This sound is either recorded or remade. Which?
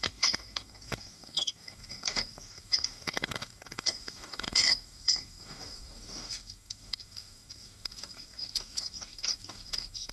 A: remade